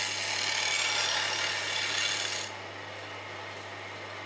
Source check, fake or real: real